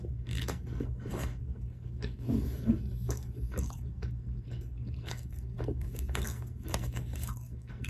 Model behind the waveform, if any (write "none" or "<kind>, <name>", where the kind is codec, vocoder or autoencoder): codec, SNAC